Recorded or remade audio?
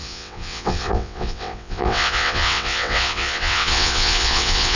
remade